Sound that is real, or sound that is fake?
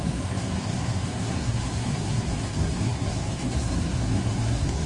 fake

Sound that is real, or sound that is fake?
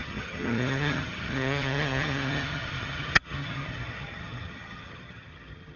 fake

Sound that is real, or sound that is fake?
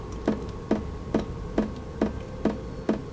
real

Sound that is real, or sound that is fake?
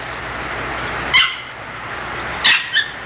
real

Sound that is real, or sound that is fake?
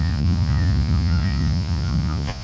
fake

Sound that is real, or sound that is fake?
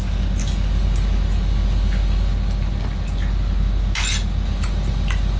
real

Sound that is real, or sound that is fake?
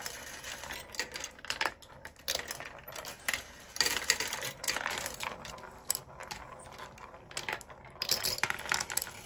real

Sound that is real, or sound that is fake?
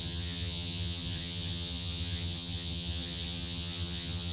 fake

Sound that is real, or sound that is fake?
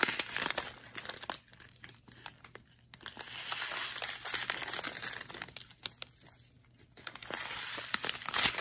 real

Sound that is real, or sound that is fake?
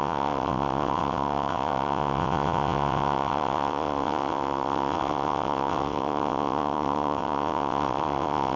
fake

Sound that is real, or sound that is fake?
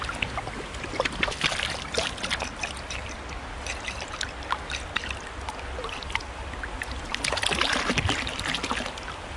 real